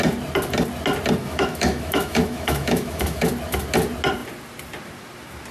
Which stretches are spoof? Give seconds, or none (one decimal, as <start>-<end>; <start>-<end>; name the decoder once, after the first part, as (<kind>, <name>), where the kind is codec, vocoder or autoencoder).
1.2-3.3 (autoencoder, DAC-VAE)